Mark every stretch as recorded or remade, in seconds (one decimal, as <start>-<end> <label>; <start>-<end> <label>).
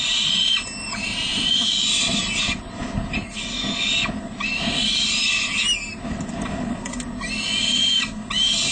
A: 0.0-8.7 recorded